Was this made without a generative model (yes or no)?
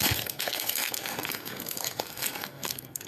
no